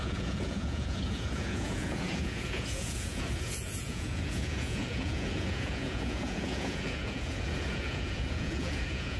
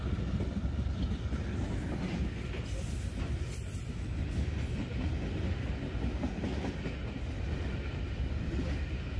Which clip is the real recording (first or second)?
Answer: second